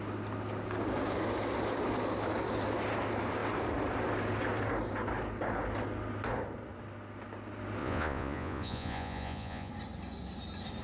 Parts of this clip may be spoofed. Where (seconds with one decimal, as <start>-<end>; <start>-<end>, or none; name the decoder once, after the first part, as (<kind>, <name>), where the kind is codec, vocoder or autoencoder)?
7.8-9.7 (vocoder, Vocos)